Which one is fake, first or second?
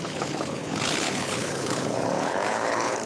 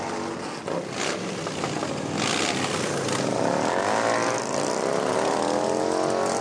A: first